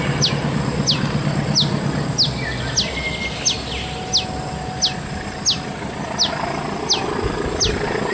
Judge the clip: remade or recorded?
recorded